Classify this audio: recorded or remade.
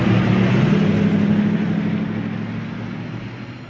recorded